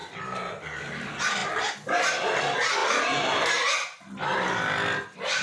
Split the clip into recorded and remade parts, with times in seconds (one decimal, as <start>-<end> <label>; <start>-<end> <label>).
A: 0.0-5.4 recorded